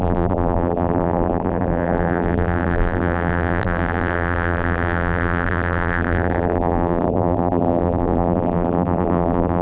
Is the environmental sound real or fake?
fake